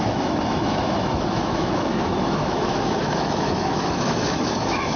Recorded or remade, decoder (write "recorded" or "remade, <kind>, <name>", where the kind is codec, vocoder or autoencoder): remade, autoencoder, DAC-VAE